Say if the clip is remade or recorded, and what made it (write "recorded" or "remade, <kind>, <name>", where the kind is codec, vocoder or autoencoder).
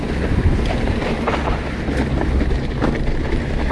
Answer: recorded